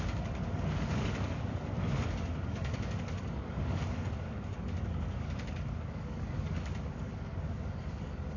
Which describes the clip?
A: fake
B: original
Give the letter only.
A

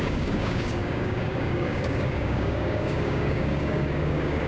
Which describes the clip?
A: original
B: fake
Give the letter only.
B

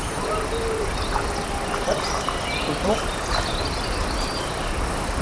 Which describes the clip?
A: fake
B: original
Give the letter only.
B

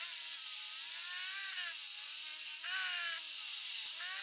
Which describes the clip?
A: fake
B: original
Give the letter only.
B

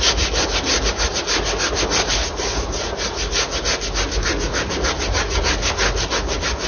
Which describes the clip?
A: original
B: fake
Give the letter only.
A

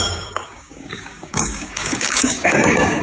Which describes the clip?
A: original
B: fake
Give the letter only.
B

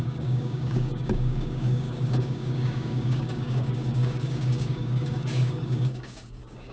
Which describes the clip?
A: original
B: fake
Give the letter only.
B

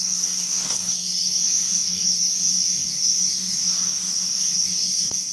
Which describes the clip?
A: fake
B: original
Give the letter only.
A